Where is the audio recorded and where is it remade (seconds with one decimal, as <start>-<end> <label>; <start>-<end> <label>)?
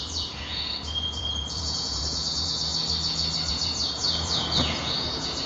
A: 0.0-2.7 remade; 2.7-3.5 recorded; 3.5-5.5 remade